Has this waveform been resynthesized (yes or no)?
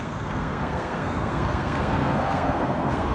yes